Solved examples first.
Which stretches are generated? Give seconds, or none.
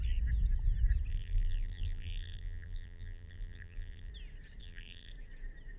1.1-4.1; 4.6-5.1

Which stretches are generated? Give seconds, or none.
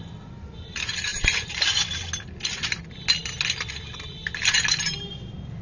none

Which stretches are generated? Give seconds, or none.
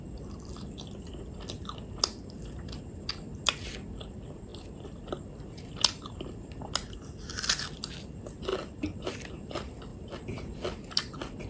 9.9-11.5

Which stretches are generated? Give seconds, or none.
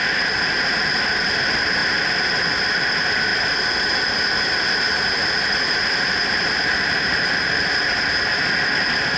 3.3-8.5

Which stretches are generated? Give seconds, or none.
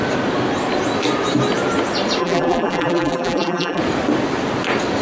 2.2-3.8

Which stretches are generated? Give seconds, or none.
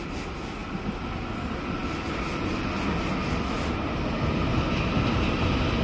0.6-1.2; 1.8-2.4